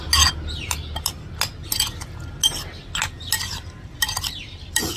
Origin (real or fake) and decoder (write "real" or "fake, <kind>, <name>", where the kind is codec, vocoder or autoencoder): real